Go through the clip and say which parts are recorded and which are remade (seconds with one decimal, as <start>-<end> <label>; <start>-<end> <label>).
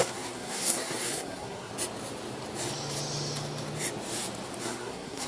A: 0.0-1.7 remade; 1.7-4.6 recorded; 4.6-5.3 remade